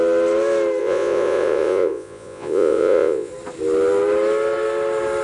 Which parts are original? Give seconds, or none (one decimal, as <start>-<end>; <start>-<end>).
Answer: 0.0-0.8; 3.3-5.2